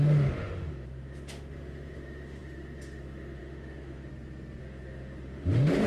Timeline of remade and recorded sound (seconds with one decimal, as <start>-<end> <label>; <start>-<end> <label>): 0.0-4.1 remade; 4.1-4.6 recorded; 4.6-5.9 remade

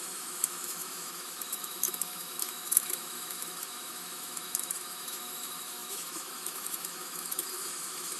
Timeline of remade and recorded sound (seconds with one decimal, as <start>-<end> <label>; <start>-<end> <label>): 0.0-8.2 remade

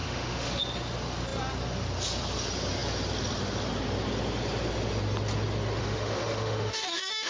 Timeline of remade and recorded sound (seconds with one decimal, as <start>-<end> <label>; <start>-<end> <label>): 0.0-0.6 remade; 0.6-5.8 recorded; 5.8-7.3 remade

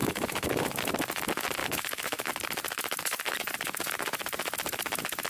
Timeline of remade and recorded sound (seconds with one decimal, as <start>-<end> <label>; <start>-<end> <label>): 0.0-0.8 remade; 0.8-1.6 recorded; 1.6-2.3 remade; 2.3-5.3 recorded

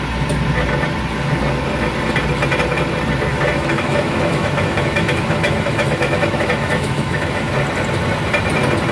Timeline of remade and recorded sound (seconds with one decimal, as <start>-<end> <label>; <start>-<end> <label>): 0.0-3.3 recorded; 3.3-7.5 remade; 7.5-8.9 recorded

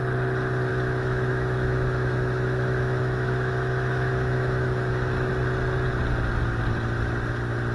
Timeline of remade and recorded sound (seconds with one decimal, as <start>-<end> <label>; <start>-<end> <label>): 0.0-0.7 recorded; 0.7-5.3 remade; 5.3-7.7 recorded

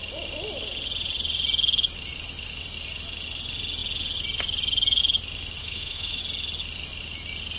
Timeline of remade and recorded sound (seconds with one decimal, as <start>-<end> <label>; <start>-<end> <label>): 0.0-5.6 recorded; 5.6-6.2 remade; 6.2-7.6 recorded